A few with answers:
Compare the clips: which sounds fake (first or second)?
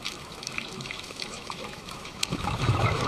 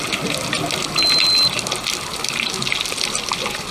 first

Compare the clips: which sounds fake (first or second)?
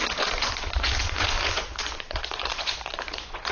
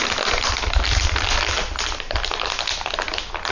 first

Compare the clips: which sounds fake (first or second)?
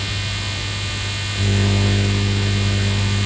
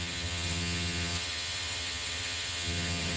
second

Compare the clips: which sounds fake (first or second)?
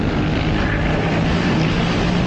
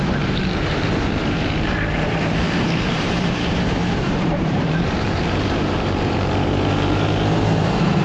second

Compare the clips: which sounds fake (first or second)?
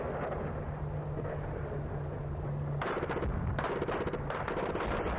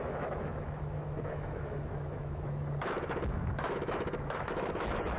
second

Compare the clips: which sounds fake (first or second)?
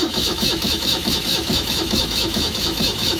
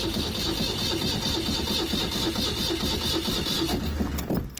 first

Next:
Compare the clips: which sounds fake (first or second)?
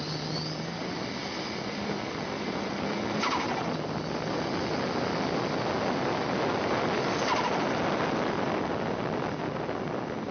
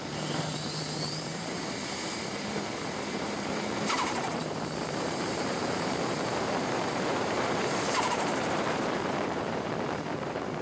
second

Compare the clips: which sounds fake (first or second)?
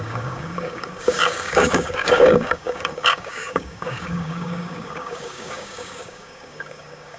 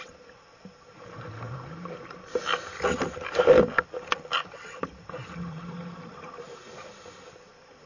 first